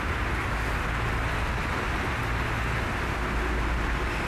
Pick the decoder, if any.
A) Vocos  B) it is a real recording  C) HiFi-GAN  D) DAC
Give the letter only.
B